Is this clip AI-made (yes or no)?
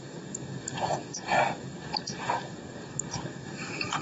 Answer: yes